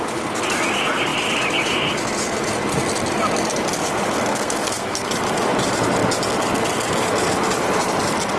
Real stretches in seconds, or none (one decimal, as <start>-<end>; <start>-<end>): 0.0-4.3; 5.1-8.4